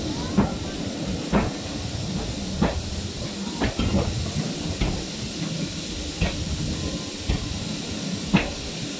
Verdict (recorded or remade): recorded